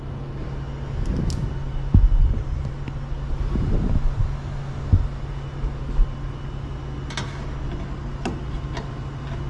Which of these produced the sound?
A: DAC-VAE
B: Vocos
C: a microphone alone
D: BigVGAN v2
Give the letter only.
C